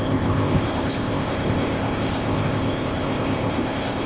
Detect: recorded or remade remade